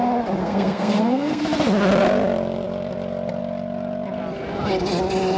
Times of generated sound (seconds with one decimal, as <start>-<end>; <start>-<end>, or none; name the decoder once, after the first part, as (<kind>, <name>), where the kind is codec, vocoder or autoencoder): 0.4-1.4 (codec, SNAC)